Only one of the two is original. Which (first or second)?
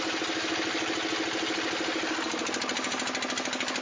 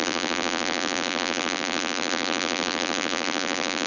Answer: first